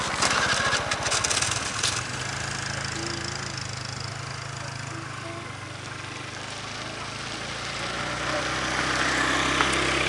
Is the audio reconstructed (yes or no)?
no